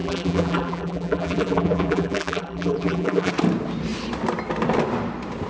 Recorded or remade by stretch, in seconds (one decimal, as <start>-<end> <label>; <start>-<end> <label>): 0.0-3.3 remade; 3.3-5.5 recorded